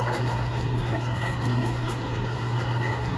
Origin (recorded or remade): remade